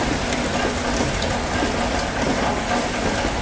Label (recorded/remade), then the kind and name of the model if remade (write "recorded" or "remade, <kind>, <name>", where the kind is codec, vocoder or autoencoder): recorded